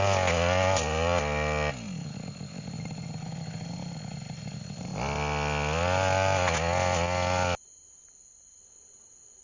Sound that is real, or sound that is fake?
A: real